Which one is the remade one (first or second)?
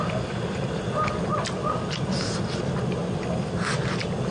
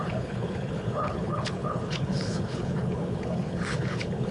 second